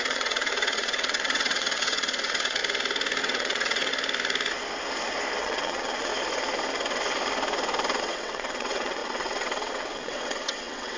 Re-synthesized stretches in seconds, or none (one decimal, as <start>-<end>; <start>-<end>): 0.0-2.6; 3.2-3.9; 5.4-6.1; 8.0-11.0